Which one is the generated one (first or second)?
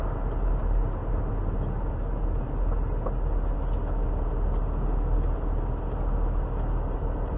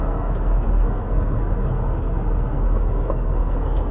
second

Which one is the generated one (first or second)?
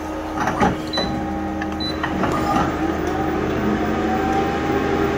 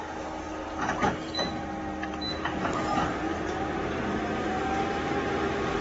second